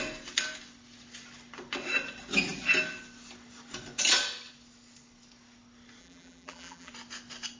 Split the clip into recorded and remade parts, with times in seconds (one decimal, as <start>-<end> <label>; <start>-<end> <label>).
0.0-6.0 recorded; 6.0-6.9 remade; 6.9-7.6 recorded